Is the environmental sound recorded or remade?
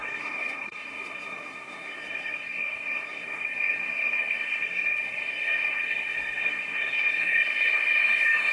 remade